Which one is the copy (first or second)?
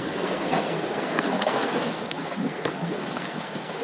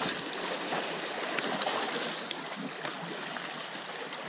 first